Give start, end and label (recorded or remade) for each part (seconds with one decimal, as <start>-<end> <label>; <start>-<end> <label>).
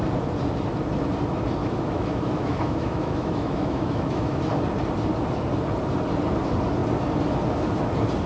0.0-1.6 recorded; 1.6-4.4 remade; 4.4-8.3 recorded